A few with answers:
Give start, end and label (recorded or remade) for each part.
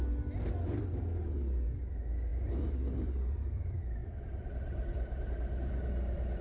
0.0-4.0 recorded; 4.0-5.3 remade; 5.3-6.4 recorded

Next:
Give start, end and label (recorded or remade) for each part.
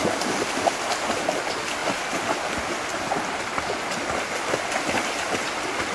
0.0-5.9 recorded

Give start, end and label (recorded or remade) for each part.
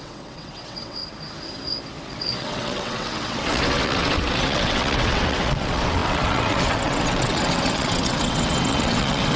0.0-1.0 remade; 1.0-2.1 recorded; 2.1-9.4 remade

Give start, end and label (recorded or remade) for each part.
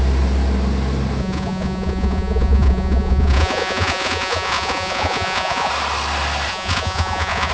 0.0-1.2 recorded; 1.2-5.7 remade; 5.7-6.5 recorded; 6.5-7.5 remade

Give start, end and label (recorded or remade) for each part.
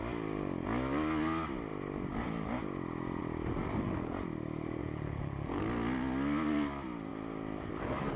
0.0-4.8 recorded; 4.8-5.6 remade; 5.6-8.2 recorded